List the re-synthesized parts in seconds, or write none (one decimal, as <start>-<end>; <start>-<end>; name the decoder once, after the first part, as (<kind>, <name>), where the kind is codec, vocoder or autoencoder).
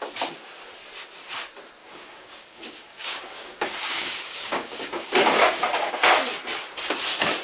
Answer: 1.8-5.9 (codec, DAC)